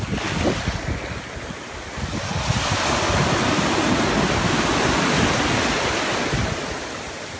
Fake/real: real